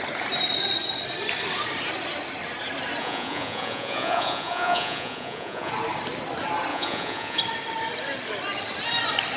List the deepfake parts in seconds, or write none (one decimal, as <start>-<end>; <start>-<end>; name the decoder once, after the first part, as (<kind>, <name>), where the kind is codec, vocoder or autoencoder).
3.0-5.7 (vocoder, Vocos); 6.7-7.4